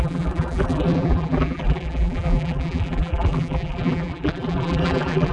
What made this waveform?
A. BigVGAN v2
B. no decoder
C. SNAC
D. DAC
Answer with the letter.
A